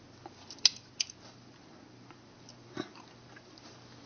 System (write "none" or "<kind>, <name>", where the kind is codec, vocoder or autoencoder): none